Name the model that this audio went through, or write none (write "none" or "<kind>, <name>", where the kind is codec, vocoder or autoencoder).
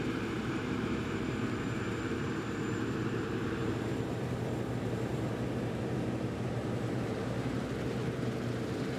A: vocoder, BigVGAN v2